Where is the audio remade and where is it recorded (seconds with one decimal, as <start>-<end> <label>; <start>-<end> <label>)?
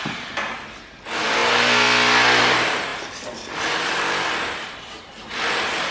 0.0-1.4 recorded; 1.4-2.4 remade; 2.4-5.9 recorded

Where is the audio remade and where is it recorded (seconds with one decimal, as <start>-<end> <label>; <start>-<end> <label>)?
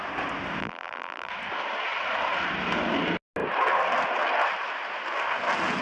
0.0-0.6 recorded; 0.6-1.3 remade; 1.3-5.8 recorded